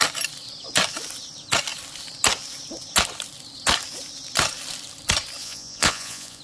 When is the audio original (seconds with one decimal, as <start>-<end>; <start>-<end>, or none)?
0.0-5.4